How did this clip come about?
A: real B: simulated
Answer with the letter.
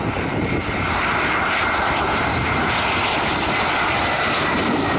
A